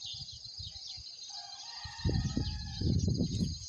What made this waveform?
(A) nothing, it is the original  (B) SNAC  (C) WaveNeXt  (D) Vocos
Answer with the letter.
A